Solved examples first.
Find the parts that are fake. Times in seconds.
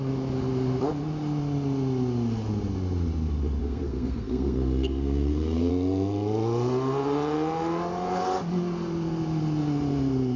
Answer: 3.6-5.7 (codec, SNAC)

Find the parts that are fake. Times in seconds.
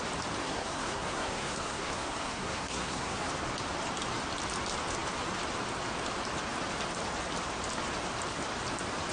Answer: 0.4-3.3 (codec, SNAC)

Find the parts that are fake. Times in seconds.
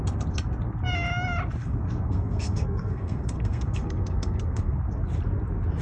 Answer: 1.6-4.8 (codec, SNAC)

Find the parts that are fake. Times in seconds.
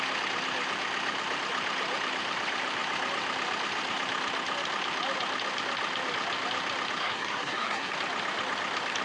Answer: 7.0-7.9 (codec, SNAC)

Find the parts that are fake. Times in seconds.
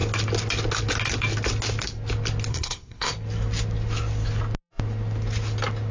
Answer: 2.5-3.1 (codec, SNAC)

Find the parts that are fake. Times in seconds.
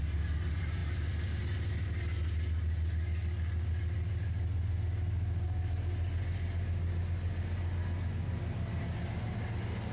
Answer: none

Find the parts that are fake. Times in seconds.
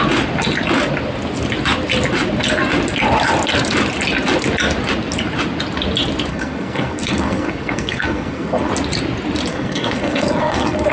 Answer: 6.3-8.7 (codec, SNAC); 9.5-10.9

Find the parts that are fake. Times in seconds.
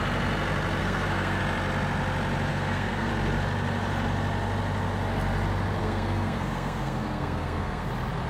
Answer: 0.8-1.4 (codec, SNAC); 2.5-3.1; 5.8-7.9